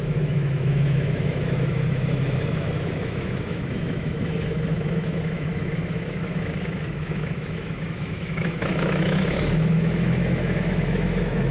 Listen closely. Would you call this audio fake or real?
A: fake